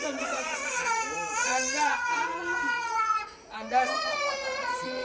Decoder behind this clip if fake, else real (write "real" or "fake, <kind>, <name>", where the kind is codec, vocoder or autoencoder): fake, vocoder, Vocos